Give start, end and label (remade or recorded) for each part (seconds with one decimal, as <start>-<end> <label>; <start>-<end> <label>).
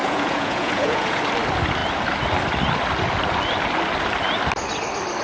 0.0-1.2 remade; 1.2-5.2 recorded